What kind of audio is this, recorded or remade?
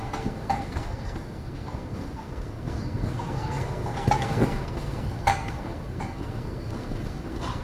remade